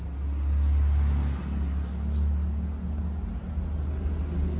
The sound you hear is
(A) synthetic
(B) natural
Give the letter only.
B